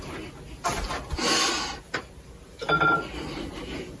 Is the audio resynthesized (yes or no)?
no